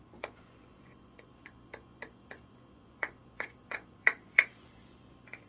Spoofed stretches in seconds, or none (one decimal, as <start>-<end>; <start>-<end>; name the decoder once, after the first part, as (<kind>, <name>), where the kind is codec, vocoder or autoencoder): 0.0-5.5 (vocoder, Vocos)